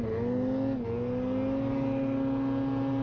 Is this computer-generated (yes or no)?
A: no